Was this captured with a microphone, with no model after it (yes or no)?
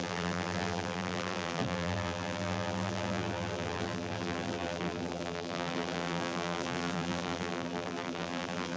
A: no